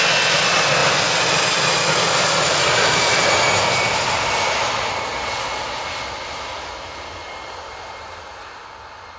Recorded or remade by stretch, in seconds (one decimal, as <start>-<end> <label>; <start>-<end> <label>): 0.0-0.8 recorded; 0.8-3.3 remade; 3.3-9.2 recorded